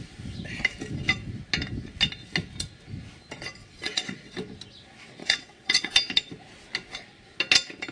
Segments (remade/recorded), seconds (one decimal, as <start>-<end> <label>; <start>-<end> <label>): 0.0-3.6 recorded; 3.6-4.3 remade; 4.3-5.2 recorded; 5.2-5.9 remade; 5.9-7.9 recorded